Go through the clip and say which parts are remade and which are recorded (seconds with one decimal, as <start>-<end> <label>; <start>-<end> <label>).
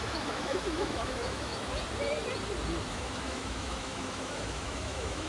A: 0.0-1.5 remade; 1.5-2.9 recorded; 2.9-5.3 remade